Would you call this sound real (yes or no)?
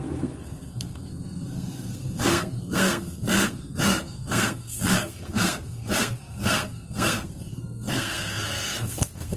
no